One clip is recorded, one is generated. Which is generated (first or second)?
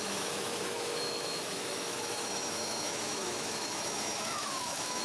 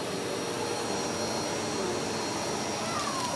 first